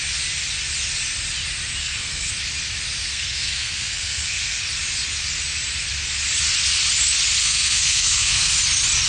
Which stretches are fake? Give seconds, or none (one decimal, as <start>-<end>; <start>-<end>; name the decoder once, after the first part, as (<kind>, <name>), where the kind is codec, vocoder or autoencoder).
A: 1.8-2.3 (codec, SNAC); 3.0-4.6; 7.4-8.5